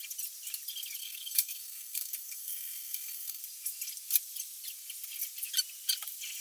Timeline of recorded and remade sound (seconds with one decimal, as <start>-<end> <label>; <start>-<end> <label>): 0.0-1.0 recorded; 1.0-3.4 remade; 3.4-6.4 recorded